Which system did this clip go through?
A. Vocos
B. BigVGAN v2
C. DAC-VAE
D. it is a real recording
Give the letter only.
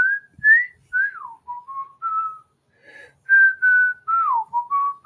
D